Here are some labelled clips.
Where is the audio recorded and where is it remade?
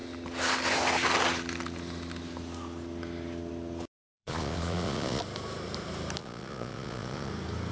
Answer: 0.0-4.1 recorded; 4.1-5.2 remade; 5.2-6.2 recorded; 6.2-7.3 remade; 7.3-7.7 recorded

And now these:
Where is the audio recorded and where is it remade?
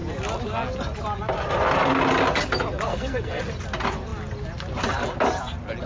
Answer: 0.0-2.9 recorded; 2.9-3.4 remade; 3.4-5.9 recorded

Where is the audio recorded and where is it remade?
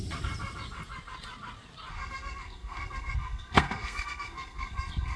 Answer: 0.0-1.9 recorded; 1.9-5.2 remade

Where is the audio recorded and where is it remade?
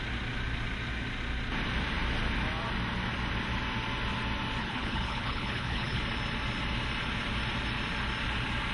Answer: 0.0-4.6 recorded; 4.6-6.0 remade; 6.0-8.7 recorded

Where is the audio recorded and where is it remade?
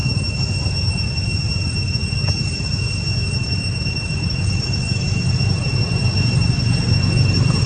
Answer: 0.0-3.2 recorded; 3.2-5.3 remade; 5.3-7.7 recorded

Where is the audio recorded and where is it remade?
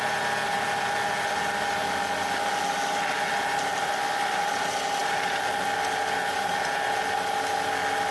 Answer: 0.0-8.1 recorded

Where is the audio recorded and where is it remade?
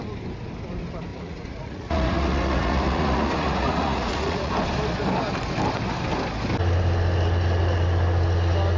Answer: 0.0-1.1 recorded; 1.1-4.5 remade; 4.5-8.8 recorded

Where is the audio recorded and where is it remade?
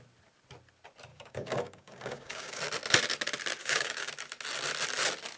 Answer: 0.0-1.1 recorded; 1.1-2.6 remade; 2.6-3.6 recorded; 3.6-4.1 remade; 4.1-5.4 recorded